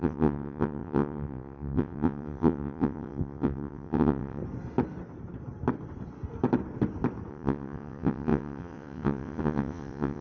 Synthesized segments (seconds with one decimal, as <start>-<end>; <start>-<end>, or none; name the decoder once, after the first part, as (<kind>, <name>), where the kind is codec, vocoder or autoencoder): 0.0-4.4 (vocoder, WaveNeXt); 7.3-10.2

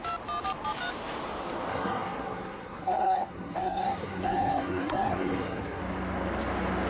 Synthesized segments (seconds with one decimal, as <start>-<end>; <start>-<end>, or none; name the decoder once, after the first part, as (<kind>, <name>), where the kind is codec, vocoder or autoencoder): 1.7-5.8 (codec, SNAC)

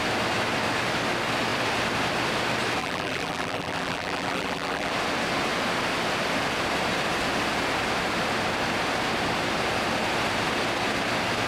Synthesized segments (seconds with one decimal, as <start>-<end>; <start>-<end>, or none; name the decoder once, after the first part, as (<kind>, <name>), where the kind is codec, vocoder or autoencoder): 2.8-4.9 (vocoder, BigVGAN v2)

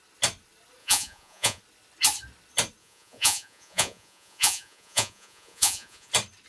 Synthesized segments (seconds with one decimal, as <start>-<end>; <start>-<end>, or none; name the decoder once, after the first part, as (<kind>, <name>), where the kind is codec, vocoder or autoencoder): 0.8-1.6 (vocoder, Vocos); 2.8-6.1

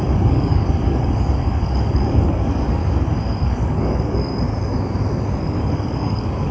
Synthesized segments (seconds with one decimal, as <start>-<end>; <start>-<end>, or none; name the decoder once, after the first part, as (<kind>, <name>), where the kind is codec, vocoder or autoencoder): 0.0-2.8 (codec, DAC); 3.4-4.3; 5.4-6.5

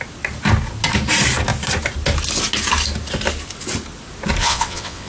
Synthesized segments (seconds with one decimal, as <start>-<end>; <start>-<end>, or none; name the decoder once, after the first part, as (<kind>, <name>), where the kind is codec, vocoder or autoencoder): 4.4-5.1 (vocoder, WaveNeXt)